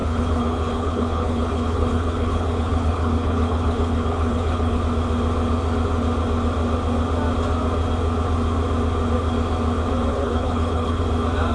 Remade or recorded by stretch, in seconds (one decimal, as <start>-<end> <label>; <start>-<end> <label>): 0.0-4.8 remade; 4.8-10.1 recorded; 10.1-11.0 remade; 11.0-11.5 recorded

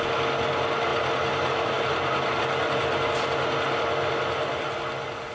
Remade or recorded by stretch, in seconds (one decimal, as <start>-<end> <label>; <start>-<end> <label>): 0.0-0.9 recorded; 0.9-2.4 remade; 2.4-5.3 recorded

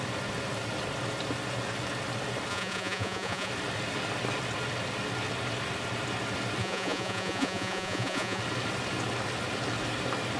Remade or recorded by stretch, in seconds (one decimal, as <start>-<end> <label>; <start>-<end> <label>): 0.0-2.5 recorded; 2.5-3.5 remade; 3.5-6.6 recorded; 6.6-8.4 remade; 8.4-10.4 recorded

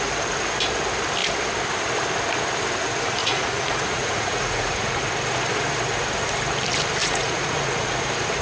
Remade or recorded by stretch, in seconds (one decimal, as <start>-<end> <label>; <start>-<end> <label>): 0.0-3.2 recorded; 3.2-5.0 remade; 5.0-7.0 recorded; 7.0-8.0 remade; 8.0-8.4 recorded